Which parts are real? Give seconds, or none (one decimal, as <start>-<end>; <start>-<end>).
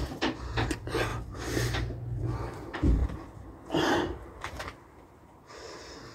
0.0-6.1